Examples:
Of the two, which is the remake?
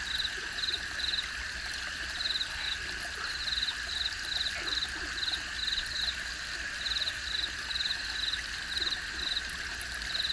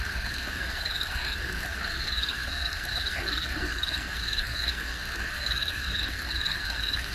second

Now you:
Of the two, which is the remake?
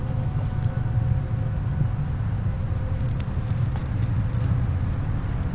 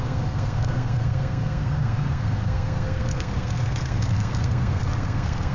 second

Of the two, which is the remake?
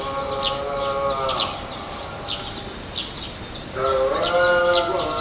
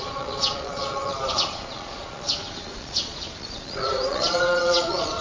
second